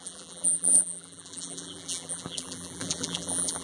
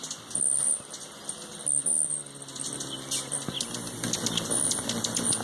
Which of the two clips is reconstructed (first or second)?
first